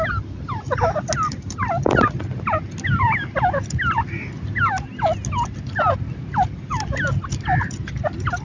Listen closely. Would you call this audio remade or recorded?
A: recorded